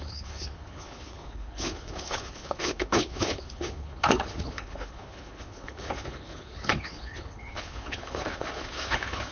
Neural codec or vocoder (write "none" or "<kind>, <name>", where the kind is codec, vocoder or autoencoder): codec, HILCodec